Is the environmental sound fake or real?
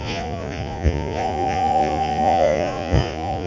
fake